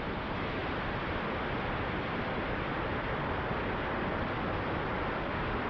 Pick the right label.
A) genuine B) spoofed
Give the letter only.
A